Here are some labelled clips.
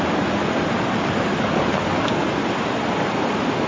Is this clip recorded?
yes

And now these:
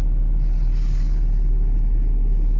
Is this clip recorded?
yes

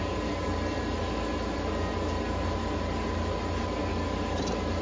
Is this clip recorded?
yes